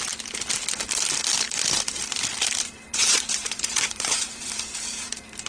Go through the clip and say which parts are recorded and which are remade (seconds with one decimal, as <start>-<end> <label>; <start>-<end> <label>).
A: 0.0-2.9 recorded; 2.9-4.4 remade; 4.4-5.5 recorded